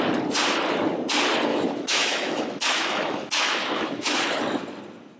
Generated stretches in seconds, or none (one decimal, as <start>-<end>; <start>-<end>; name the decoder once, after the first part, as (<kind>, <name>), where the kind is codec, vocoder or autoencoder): 1.5-4.2 (autoencoder, DAC-VAE)